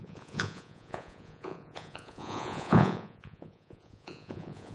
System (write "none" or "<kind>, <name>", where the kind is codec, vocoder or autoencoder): vocoder, Vocos